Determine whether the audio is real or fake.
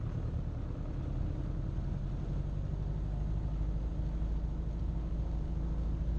real